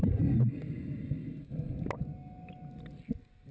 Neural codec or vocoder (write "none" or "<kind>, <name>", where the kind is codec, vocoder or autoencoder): none